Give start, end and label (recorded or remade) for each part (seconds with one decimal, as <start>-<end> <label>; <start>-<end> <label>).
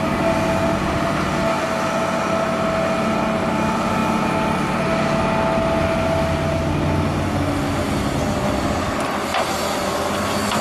0.0-10.6 recorded